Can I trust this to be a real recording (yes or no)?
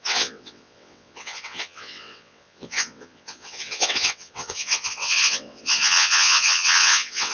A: no